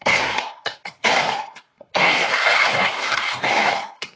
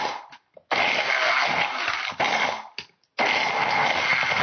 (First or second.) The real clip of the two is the second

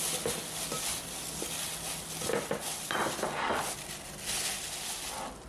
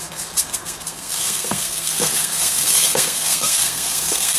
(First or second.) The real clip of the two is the first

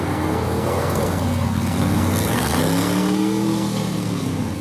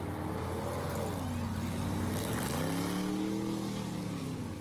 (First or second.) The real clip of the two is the second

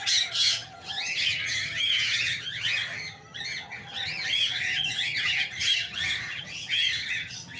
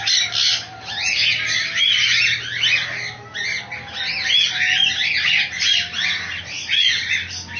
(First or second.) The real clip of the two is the second